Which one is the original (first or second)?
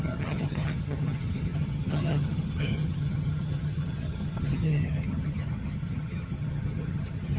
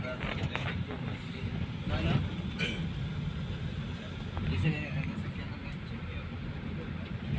second